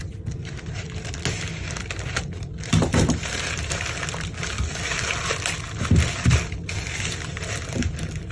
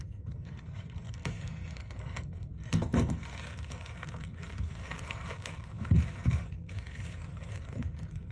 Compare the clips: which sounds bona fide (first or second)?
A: first